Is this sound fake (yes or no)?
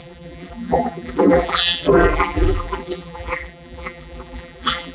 yes